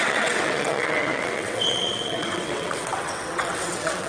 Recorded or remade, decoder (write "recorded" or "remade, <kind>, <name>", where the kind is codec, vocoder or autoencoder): remade, vocoder, WaveNeXt